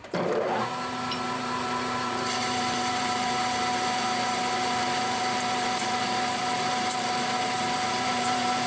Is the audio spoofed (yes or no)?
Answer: yes